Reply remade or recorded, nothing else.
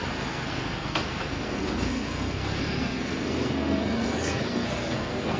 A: remade